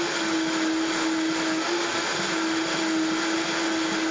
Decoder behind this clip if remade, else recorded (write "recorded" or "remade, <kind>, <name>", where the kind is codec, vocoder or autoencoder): recorded